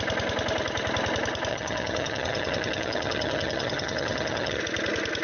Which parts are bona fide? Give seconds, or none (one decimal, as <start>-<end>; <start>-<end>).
0.0-1.5; 4.6-5.2

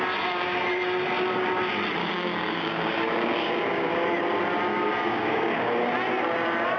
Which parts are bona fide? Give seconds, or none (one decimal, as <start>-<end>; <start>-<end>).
0.0-2.0; 3.9-4.7; 5.9-6.8

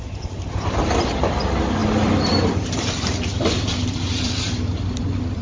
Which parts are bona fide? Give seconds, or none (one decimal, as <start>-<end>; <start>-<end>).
0.0-1.8; 5.0-5.4

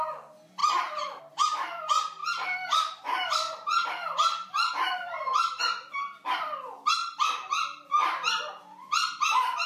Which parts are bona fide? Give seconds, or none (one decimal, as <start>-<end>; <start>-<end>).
0.0-0.6; 1.2-2.2; 5.6-7.0